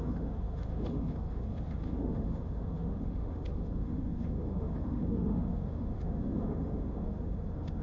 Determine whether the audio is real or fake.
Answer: fake